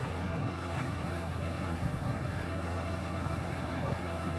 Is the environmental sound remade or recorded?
remade